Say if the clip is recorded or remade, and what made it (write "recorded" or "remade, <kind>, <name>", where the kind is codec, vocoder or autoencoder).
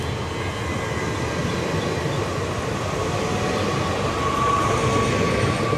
recorded